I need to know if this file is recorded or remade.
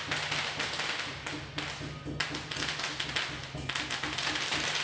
recorded